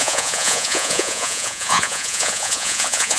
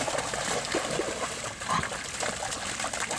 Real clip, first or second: second